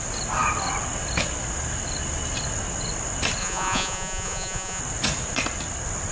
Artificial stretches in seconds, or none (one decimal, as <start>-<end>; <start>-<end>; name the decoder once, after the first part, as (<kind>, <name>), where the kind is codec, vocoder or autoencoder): 3.4-4.8 (vocoder, Vocos)